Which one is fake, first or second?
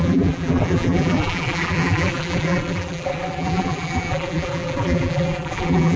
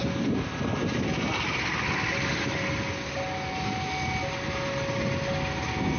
first